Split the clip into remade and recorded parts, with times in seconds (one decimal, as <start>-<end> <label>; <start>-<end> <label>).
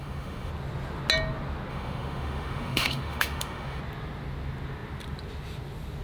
0.0-0.5 remade; 0.5-1.7 recorded; 1.7-3.8 remade; 3.8-6.0 recorded